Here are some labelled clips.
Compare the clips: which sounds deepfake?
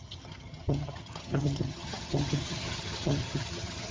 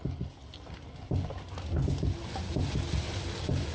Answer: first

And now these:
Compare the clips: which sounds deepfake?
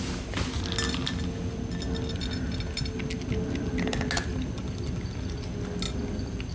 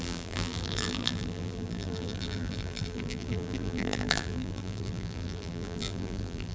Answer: second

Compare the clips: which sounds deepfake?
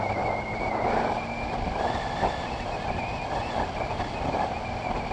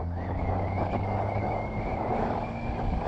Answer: second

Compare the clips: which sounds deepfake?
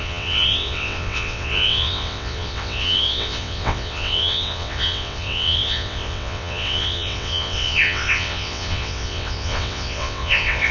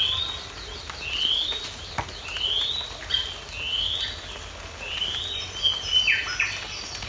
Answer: first